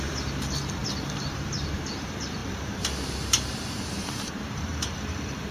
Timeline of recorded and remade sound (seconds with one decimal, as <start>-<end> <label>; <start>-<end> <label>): 0.0-5.5 remade

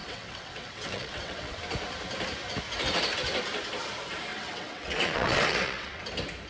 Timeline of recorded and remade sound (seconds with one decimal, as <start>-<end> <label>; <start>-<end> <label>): 0.0-1.6 remade; 1.6-4.3 recorded; 4.3-6.0 remade; 6.0-6.5 recorded

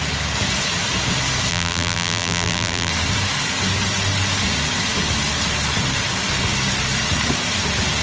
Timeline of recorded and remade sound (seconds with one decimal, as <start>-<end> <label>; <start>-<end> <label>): 0.0-1.5 recorded; 1.5-2.9 remade; 2.9-8.0 recorded

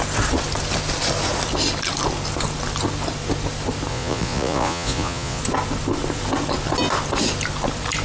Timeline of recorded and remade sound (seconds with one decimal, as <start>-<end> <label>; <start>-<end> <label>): 0.0-3.9 recorded; 3.9-5.4 remade; 5.4-8.0 recorded

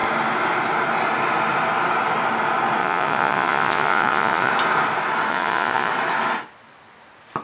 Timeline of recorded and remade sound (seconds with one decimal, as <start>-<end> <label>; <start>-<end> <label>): 0.0-2.8 recorded; 2.8-4.5 remade; 4.5-5.3 recorded; 5.3-5.9 remade; 5.9-7.4 recorded